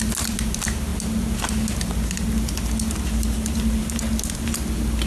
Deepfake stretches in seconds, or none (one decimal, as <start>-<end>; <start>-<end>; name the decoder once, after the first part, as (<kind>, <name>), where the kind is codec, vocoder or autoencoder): none